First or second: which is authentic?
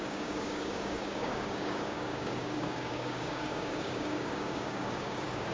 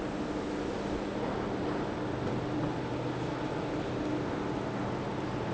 second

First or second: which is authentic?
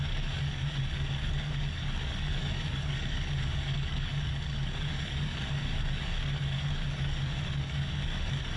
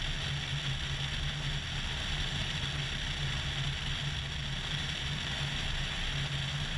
second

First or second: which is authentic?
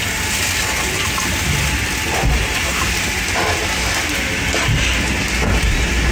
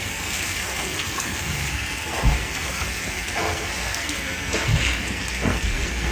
first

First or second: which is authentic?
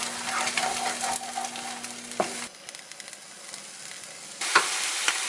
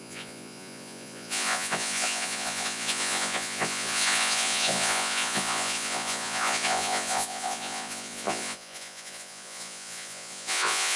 first